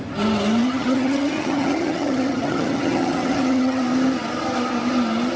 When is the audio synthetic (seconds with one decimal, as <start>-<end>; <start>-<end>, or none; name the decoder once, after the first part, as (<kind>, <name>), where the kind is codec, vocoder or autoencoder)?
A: 0.6-3.8 (vocoder, HiFi-GAN)

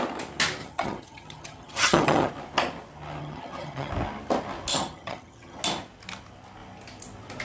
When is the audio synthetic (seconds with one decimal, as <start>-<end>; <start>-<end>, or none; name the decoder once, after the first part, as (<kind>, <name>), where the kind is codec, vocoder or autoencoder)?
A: 0.6-2.3 (vocoder, HiFi-GAN); 3.2-3.9; 4.7-5.6

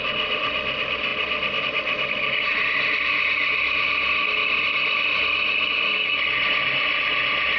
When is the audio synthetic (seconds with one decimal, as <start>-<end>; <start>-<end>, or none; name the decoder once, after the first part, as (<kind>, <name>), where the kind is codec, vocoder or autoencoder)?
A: none

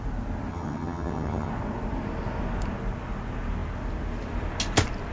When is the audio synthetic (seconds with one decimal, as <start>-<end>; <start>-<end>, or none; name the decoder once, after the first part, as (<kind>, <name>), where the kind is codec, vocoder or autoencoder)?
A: 0.5-1.5 (vocoder, HiFi-GAN)

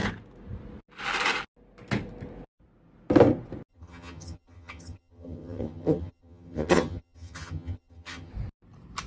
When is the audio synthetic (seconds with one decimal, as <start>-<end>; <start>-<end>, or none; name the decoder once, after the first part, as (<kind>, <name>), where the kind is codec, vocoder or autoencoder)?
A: 3.7-8.3 (vocoder, HiFi-GAN)